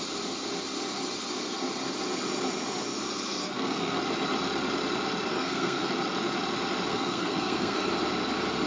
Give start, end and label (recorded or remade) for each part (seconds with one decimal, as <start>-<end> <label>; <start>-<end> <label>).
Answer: 0.0-3.4 recorded; 3.4-4.0 remade; 4.0-5.3 recorded; 5.3-5.9 remade; 5.9-6.9 recorded; 6.9-7.9 remade; 7.9-8.7 recorded